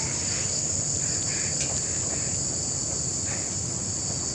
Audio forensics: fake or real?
real